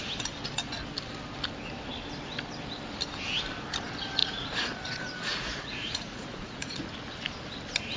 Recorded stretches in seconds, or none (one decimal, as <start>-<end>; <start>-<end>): 0.0-4.2; 6.9-8.0